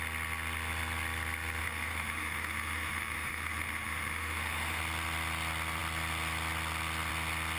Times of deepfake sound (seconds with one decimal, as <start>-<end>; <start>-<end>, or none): 1.6-4.8